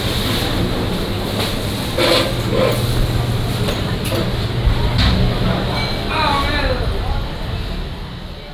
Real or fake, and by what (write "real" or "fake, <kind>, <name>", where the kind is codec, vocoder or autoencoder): real